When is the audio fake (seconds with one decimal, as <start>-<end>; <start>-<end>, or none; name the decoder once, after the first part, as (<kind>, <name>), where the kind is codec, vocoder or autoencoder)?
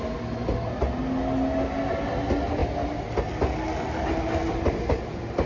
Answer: none